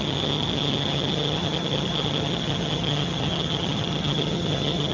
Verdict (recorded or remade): remade